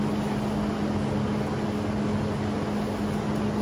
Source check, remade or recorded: recorded